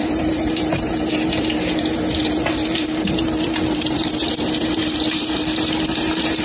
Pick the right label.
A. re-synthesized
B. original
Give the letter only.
A